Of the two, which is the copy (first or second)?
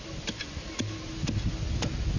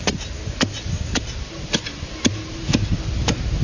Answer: second